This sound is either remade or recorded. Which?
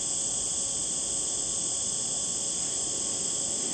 recorded